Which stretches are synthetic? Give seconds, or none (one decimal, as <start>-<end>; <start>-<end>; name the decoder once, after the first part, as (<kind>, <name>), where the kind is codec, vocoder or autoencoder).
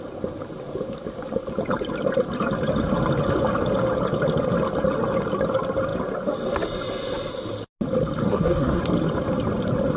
8.2-8.8 (codec, SNAC)